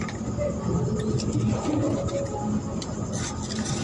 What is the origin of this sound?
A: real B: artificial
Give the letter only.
A